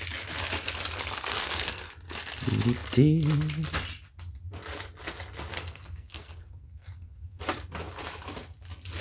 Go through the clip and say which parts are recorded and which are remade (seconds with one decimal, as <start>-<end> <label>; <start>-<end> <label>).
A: 0.0-1.3 recorded; 1.3-1.9 remade; 1.9-5.5 recorded; 5.5-7.4 remade; 7.4-9.0 recorded